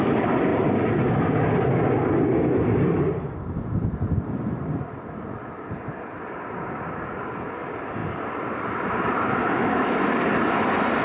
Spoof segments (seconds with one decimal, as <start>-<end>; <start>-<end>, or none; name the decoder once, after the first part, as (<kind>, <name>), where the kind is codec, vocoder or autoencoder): 0.0-0.5 (vocoder, BigVGAN v2); 4.2-11.0